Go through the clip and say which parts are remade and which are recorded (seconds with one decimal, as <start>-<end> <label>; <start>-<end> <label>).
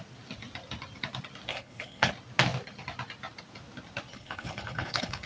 0.0-1.5 recorded; 1.5-2.1 remade; 2.1-4.1 recorded; 4.1-5.3 remade